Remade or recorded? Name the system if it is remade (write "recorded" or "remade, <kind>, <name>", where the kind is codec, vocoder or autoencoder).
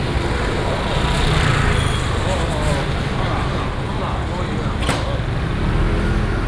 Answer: recorded